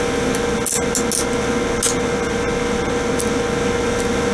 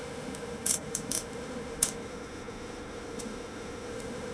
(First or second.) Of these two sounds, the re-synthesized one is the second